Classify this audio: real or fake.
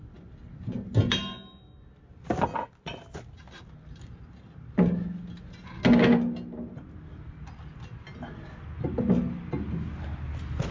real